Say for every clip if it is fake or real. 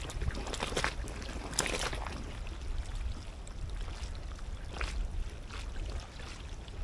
real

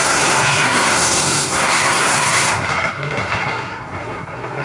fake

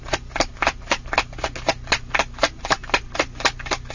real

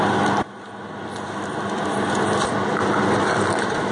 real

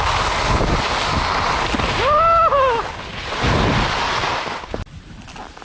real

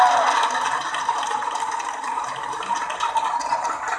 real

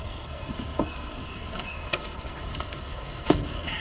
fake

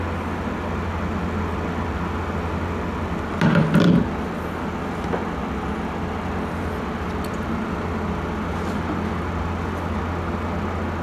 real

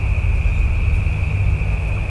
real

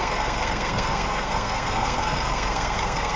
fake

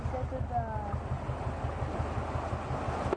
real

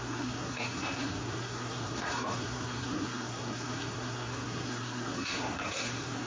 fake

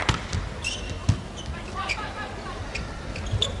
real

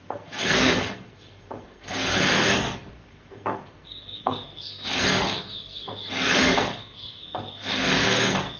fake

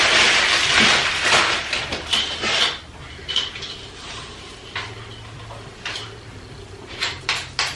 real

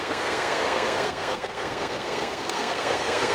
fake